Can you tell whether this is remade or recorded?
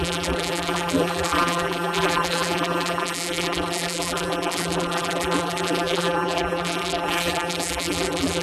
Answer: remade